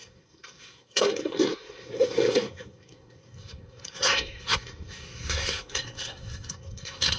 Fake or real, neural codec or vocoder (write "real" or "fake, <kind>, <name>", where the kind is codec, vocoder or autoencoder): fake, codec, SNAC